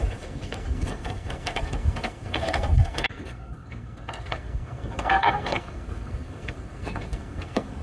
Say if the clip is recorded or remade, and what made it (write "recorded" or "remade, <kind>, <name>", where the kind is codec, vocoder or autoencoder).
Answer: remade, codec, SNAC